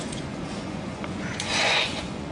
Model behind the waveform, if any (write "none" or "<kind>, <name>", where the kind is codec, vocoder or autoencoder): vocoder, Vocos